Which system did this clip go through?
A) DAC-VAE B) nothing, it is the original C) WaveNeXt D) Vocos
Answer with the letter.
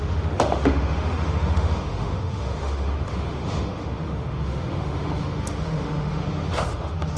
A